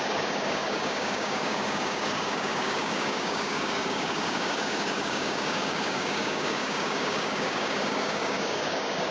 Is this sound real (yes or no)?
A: no